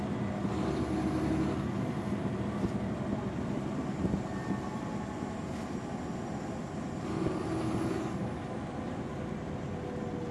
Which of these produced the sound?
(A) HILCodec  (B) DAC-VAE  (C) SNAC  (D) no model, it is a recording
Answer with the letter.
D